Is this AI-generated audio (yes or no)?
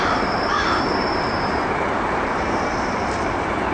yes